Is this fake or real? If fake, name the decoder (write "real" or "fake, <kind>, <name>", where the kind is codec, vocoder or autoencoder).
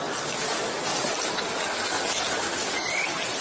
real